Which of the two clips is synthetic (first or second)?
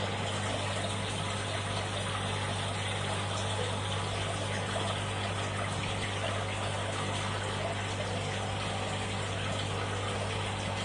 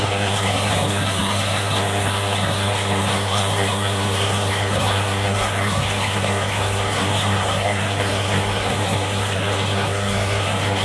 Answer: second